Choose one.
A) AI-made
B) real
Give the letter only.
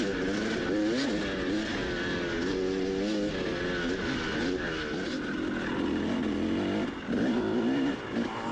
B